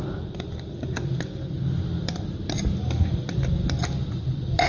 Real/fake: real